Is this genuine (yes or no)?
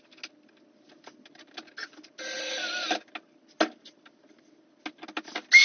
yes